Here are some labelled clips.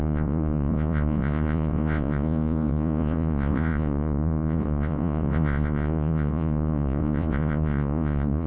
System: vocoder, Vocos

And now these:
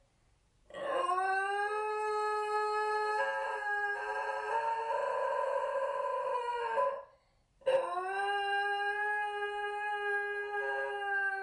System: none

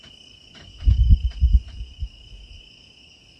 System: codec, DAC